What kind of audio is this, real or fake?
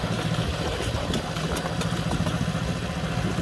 real